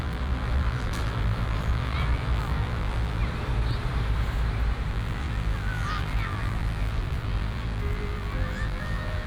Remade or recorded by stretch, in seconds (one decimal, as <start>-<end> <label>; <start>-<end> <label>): 0.0-3.2 remade; 3.2-4.9 recorded; 4.9-9.3 remade

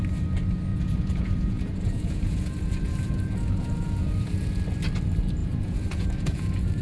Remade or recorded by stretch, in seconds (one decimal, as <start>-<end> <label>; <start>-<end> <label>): 0.0-0.7 recorded; 0.7-4.6 remade; 4.6-5.4 recorded; 5.4-6.8 remade

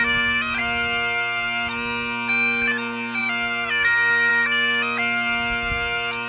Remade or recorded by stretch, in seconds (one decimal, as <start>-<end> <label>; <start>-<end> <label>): 0.0-6.3 recorded

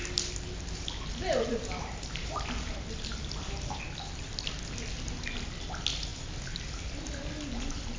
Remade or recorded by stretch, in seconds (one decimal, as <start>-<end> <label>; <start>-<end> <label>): 0.0-8.0 recorded

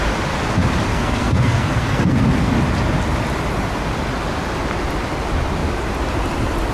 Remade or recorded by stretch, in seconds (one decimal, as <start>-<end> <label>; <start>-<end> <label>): 0.0-0.9 recorded; 0.9-2.5 remade; 2.5-6.7 recorded